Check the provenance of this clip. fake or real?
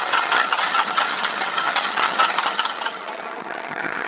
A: fake